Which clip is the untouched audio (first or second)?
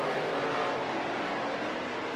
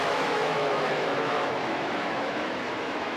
first